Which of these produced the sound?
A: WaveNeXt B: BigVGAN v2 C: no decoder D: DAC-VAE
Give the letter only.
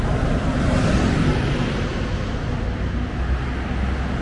C